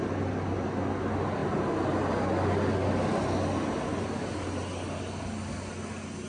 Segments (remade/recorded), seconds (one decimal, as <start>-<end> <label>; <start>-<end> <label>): 0.0-6.3 recorded